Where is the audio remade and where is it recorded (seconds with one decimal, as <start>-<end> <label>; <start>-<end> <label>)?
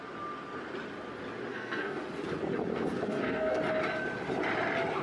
0.0-1.5 recorded; 1.5-2.0 remade; 2.0-2.7 recorded; 2.7-3.6 remade; 3.6-5.0 recorded